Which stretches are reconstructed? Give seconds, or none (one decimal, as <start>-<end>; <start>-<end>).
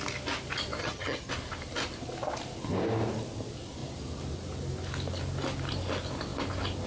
0.8-1.3